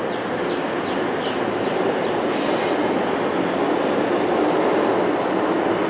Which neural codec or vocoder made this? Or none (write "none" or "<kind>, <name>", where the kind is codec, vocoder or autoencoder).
none